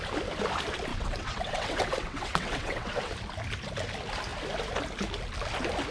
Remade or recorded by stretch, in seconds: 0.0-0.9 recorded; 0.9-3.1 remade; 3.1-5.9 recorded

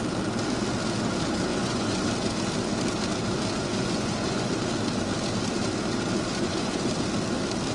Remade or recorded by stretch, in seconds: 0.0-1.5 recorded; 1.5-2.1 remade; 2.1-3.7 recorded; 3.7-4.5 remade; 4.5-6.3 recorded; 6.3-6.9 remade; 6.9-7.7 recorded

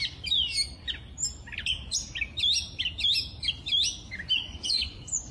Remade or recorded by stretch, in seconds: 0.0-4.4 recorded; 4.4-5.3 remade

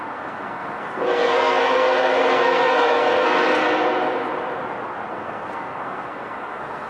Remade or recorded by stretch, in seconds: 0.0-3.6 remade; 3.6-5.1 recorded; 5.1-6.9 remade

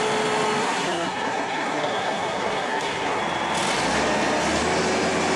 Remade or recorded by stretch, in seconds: 0.0-0.6 recorded; 0.6-3.2 remade; 3.2-5.4 recorded